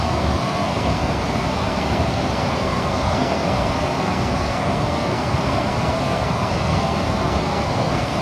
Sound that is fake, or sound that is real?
fake